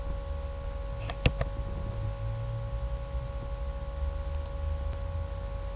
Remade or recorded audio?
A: recorded